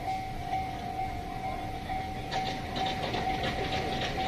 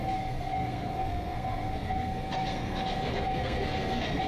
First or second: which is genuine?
first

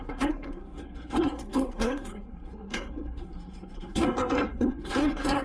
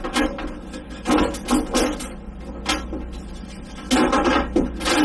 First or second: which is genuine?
second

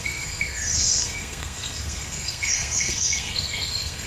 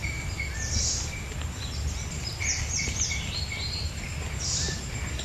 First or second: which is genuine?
second